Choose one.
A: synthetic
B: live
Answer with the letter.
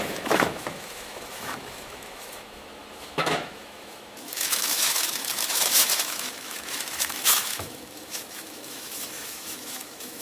A